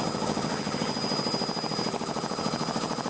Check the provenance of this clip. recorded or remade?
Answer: recorded